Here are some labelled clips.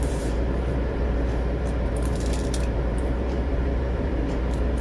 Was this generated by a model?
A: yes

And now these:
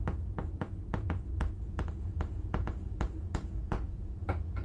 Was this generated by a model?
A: yes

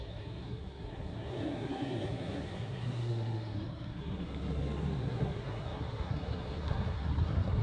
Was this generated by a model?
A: yes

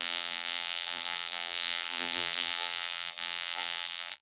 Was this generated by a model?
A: yes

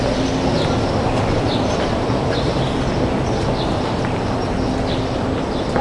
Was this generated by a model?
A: no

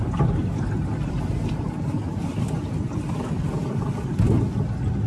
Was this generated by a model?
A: no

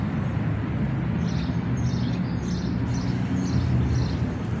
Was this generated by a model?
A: no